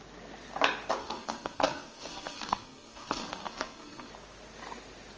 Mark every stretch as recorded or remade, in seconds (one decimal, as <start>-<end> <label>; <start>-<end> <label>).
0.0-1.0 recorded; 1.0-4.1 remade; 4.1-5.2 recorded